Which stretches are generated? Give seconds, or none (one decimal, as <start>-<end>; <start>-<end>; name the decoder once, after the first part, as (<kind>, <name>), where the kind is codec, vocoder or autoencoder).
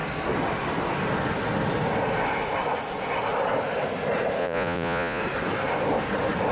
4.4-5.2 (vocoder, Vocos)